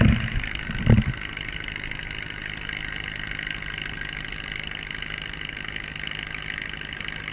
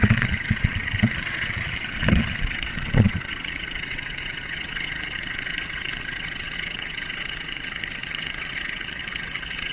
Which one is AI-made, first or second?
second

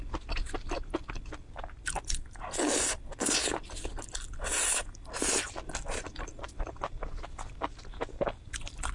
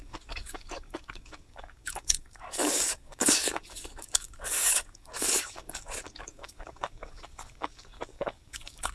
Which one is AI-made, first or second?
second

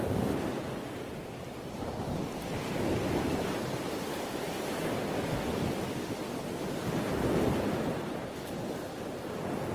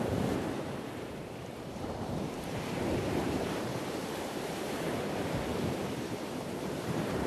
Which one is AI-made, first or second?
second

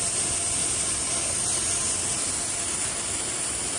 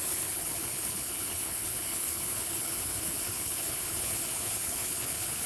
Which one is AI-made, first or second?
second